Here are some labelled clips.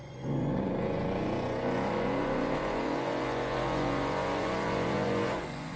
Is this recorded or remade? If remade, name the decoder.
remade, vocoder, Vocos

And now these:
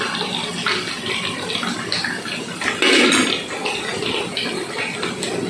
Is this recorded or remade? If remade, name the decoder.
recorded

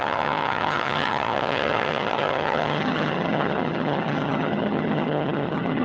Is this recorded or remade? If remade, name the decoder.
remade, vocoder, HiFi-GAN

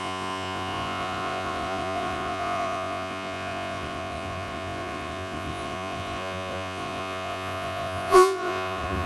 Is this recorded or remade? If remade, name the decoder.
remade, vocoder, Vocos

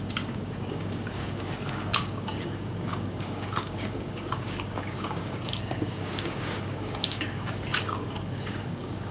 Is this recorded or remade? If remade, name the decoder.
remade, codec, DAC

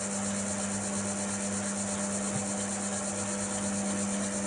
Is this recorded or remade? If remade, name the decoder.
recorded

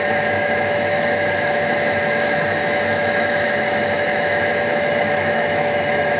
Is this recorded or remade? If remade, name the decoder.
remade, autoencoder, DAC-VAE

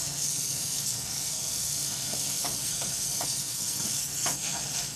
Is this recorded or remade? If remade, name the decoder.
remade, codec, SNAC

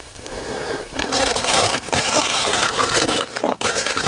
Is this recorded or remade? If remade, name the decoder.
remade, codec, SNAC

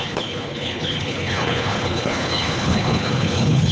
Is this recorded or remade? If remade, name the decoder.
remade, codec, HILCodec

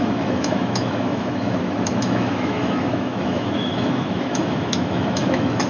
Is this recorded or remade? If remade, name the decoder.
remade, autoencoder, DAC-VAE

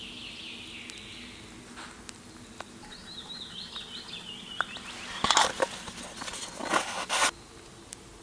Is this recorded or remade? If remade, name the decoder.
recorded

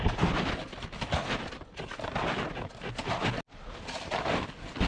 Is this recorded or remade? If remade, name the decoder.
recorded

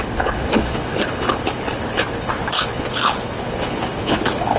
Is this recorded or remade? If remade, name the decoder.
remade, codec, HILCodec